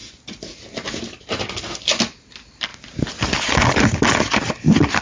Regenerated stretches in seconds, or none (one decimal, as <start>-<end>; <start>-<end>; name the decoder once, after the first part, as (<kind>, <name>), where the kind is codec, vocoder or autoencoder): none